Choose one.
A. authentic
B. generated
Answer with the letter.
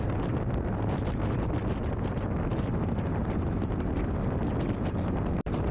A